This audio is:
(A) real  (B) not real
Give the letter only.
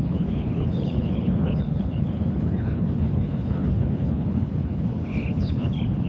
B